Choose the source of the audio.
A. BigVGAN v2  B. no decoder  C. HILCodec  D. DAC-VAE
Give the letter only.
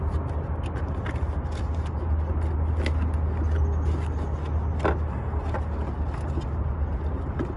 B